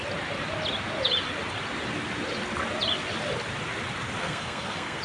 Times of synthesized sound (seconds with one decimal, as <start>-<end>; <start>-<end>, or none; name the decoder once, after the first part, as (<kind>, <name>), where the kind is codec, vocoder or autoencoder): 4.2-5.0 (codec, SNAC)